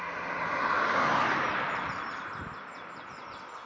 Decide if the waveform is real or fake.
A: real